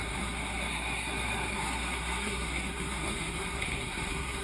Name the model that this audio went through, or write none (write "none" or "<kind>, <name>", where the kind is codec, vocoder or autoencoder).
codec, SNAC